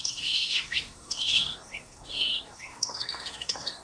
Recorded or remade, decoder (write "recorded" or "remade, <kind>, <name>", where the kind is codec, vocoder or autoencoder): remade, codec, SNAC